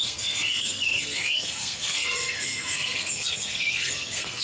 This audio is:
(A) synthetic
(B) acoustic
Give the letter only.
A